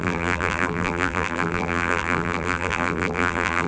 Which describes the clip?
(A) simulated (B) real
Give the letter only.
A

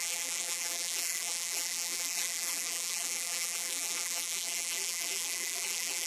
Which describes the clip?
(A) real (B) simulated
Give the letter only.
B